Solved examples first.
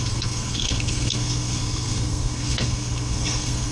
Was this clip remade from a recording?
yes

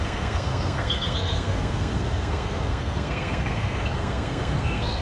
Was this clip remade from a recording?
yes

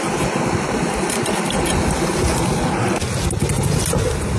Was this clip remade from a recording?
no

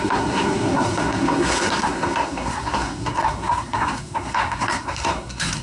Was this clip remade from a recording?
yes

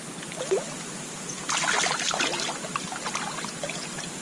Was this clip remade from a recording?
no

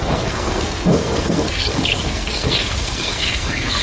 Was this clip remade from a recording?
yes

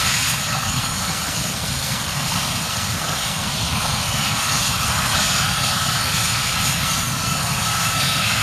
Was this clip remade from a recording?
yes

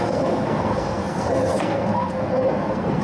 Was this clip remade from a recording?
yes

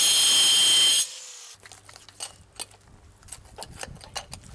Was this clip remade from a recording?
no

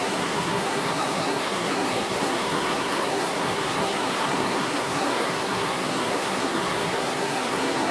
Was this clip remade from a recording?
yes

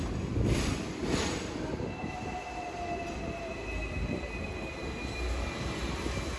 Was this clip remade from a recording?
no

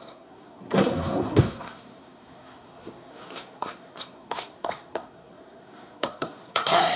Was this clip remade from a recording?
yes